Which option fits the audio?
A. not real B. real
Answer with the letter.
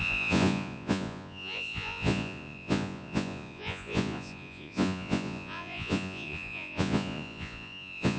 A